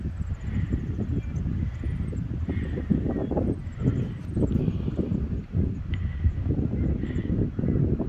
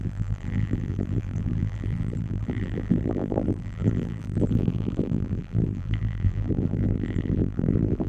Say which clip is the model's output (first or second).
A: second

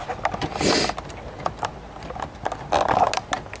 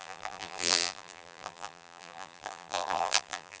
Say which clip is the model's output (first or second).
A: second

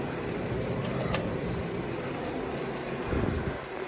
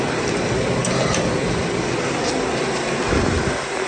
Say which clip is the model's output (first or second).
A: first